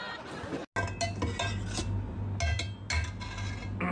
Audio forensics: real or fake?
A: real